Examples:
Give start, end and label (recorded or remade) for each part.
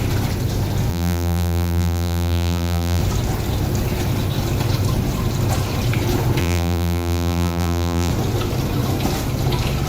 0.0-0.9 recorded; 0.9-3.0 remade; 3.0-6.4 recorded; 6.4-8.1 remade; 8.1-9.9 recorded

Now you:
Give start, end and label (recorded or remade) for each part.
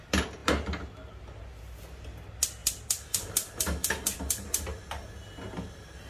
0.0-2.6 recorded; 2.6-4.6 remade; 4.6-6.1 recorded